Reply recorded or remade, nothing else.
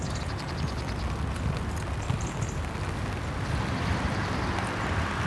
recorded